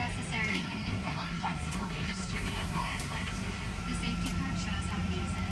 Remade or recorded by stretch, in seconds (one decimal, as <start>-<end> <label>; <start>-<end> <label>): 0.0-0.5 recorded; 0.5-3.8 remade; 3.8-5.5 recorded